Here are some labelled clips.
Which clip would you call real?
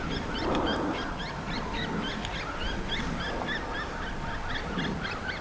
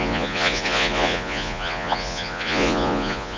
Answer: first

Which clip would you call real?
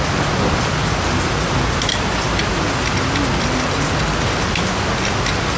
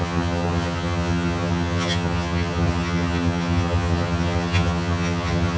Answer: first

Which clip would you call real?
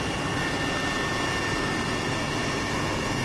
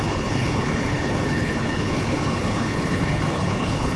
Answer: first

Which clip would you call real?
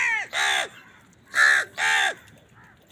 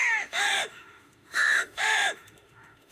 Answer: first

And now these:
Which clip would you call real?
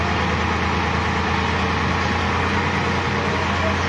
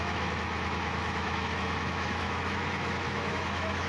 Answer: first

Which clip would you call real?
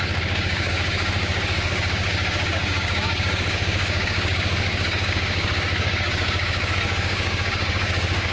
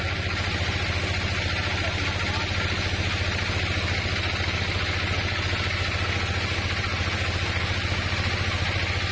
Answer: second